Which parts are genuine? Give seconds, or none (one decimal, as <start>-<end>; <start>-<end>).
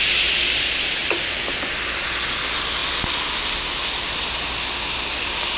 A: 0.0-1.0; 1.6-5.6